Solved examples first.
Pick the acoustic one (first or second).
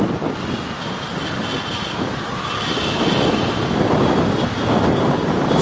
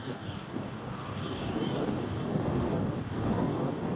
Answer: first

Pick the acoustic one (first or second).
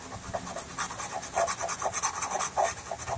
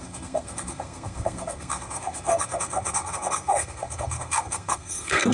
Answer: first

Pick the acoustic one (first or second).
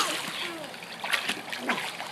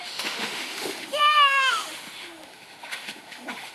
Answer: first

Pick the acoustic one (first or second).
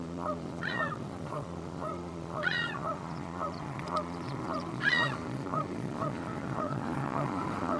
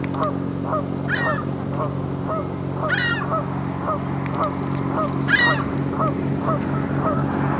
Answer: second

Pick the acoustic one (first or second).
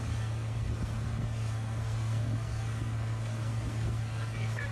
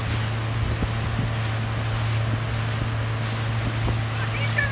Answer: second